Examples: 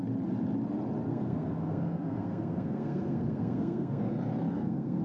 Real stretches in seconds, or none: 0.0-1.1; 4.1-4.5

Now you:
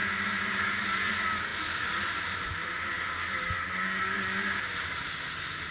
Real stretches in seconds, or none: 0.0-5.7

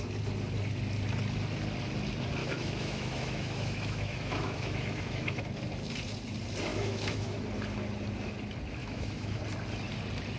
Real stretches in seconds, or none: 0.0-2.4; 5.4-6.7; 7.4-8.8; 9.4-10.4

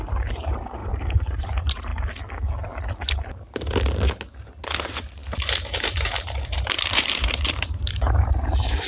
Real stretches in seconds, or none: 1.9-4.4

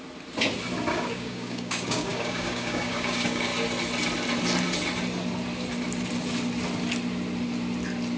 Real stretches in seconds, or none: 0.0-0.9; 3.5-8.2